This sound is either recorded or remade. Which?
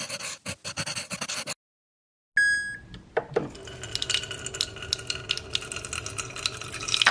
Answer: recorded